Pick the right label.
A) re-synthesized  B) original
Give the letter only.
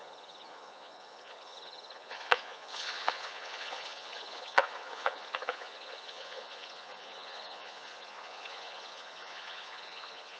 A